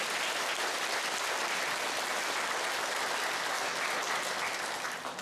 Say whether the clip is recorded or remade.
recorded